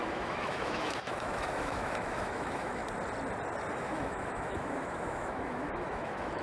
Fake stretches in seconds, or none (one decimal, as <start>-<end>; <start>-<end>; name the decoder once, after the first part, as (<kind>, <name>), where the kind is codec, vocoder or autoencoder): 0.0-2.8 (autoencoder, DAC-VAE); 3.7-6.4